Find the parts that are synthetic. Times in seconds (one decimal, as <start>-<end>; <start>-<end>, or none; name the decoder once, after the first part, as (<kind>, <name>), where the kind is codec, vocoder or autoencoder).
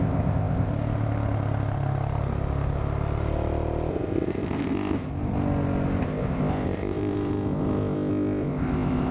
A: 0.0-0.7 (codec, ZipCodec); 3.9-5.1; 6.0-9.1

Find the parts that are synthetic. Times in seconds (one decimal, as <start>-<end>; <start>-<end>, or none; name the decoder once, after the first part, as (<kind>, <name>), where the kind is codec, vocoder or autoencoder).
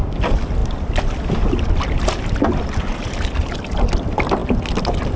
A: none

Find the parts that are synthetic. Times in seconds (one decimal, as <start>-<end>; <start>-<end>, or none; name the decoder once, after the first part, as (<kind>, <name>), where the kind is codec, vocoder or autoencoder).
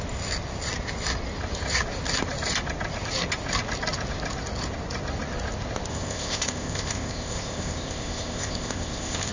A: 5.9-9.3 (codec, ZipCodec)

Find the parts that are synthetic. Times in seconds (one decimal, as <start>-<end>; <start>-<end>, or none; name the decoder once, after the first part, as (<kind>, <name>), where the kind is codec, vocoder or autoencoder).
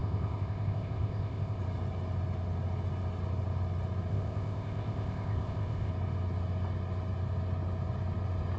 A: 0.0-1.6 (codec, ZipCodec); 4.1-5.9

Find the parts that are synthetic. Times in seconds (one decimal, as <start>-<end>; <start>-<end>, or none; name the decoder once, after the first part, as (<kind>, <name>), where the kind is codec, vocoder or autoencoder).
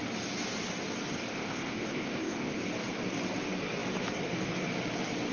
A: 1.3-2.6 (codec, ZipCodec)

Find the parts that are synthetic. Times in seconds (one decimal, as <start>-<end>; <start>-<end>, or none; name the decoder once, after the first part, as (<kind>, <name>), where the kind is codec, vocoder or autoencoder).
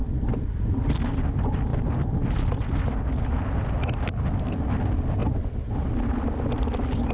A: none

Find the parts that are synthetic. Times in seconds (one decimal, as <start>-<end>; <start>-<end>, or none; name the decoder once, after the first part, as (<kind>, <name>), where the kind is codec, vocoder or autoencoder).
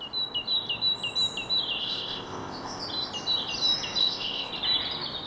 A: 1.8-2.8 (codec, ZipCodec); 4.0-4.5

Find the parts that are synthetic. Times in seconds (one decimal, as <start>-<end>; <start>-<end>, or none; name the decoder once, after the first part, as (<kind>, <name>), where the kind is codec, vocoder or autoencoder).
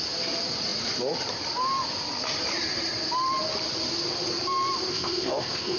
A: 4.9-5.8 (codec, ZipCodec)